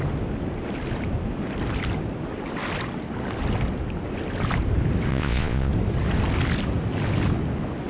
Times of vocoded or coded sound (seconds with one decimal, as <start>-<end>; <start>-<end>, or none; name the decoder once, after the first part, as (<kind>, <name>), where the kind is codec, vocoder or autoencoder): 5.1-5.7 (vocoder, Vocos)